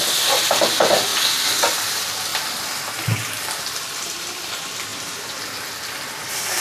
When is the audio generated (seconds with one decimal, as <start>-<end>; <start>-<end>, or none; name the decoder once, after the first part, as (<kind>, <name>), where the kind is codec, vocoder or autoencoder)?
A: 0.0-1.1 (vocoder, BigVGAN v2); 1.6-6.6